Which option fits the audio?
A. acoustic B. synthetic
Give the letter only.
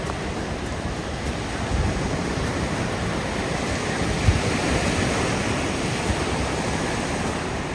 A